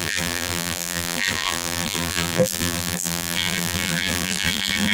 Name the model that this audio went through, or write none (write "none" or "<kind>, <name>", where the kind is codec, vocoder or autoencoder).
vocoder, BigVGAN v2